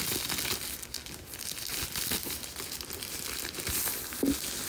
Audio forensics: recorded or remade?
recorded